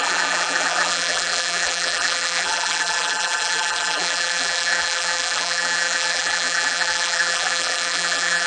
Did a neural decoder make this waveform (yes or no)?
yes